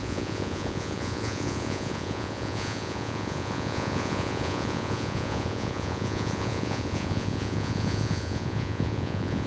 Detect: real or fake fake